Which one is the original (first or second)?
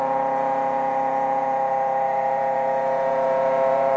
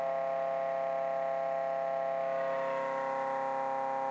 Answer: second